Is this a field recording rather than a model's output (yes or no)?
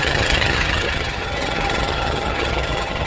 no